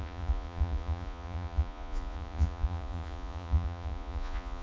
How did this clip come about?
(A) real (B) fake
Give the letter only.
B